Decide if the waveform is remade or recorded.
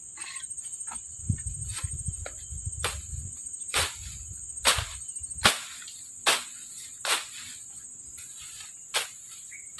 recorded